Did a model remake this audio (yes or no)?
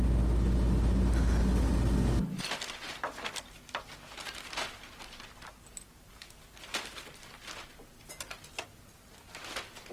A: no